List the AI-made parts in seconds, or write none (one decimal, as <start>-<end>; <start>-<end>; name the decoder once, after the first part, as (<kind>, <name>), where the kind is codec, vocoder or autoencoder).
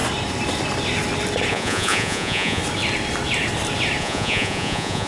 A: 1.5-2.6 (vocoder, Vocos); 4.0-5.1